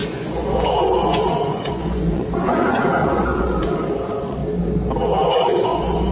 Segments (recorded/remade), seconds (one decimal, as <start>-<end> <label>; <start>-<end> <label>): 0.0-4.4 remade; 4.4-5.5 recorded; 5.5-6.1 remade